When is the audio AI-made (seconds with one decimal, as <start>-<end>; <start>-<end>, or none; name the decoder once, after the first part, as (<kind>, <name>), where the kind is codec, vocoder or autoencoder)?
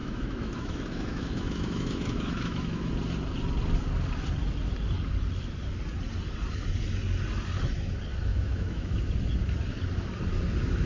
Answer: 0.0-2.9 (autoencoder, DAC-VAE); 8.3-9.1